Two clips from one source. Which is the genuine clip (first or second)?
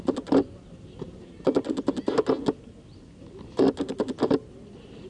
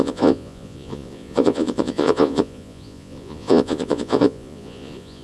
first